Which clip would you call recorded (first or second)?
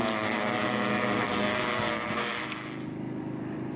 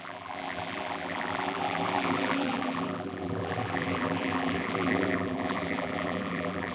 first